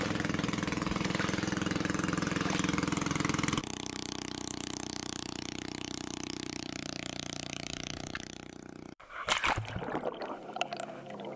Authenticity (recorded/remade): remade